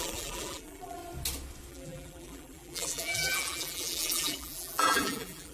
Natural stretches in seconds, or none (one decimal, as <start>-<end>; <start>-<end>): 1.0-1.7